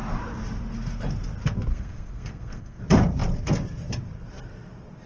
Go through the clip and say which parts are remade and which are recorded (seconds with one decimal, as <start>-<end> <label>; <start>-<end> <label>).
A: 0.0-1.7 recorded; 1.7-2.8 remade; 2.8-5.1 recorded